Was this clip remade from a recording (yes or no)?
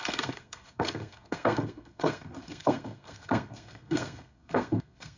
yes